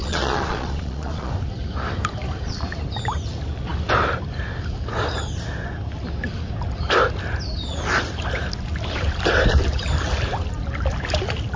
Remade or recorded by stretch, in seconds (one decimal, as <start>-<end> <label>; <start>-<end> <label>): 0.0-1.3 remade; 1.3-11.6 recorded